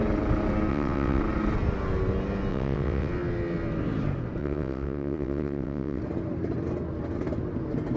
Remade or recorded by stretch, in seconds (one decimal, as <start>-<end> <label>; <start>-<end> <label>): 0.0-0.7 recorded; 0.7-1.2 remade; 1.2-2.5 recorded; 2.5-3.1 remade; 3.1-4.4 recorded; 4.4-6.0 remade; 6.0-8.0 recorded